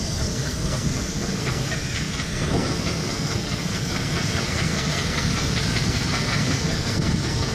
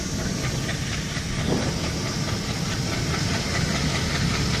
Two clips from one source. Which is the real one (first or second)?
second